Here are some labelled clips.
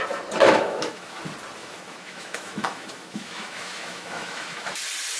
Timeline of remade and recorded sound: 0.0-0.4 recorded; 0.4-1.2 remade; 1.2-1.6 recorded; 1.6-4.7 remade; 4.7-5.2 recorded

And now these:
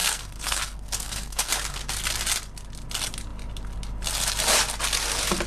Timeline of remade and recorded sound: 0.0-2.0 remade; 2.0-5.5 recorded

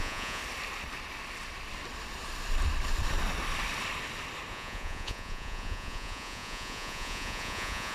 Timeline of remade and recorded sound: 0.0-0.4 remade; 0.4-4.5 recorded; 4.5-7.9 remade

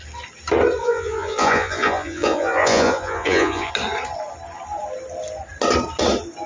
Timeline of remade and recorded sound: 0.0-0.8 recorded; 0.8-3.7 remade; 3.7-6.5 recorded